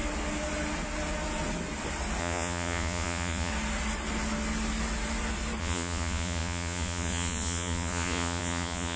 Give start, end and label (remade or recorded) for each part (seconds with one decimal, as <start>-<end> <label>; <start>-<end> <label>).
0.0-2.2 recorded; 2.2-3.5 remade; 3.5-5.6 recorded; 5.6-9.0 remade